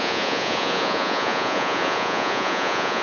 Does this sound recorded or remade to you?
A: remade